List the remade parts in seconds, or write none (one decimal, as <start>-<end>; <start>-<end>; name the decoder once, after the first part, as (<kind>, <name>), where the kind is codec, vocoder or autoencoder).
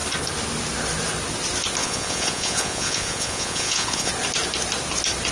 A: 1.8-4.1 (vocoder, Vocos)